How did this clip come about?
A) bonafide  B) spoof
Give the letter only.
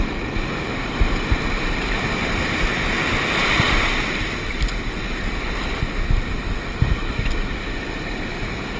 A